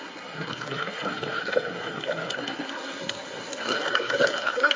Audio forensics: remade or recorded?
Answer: remade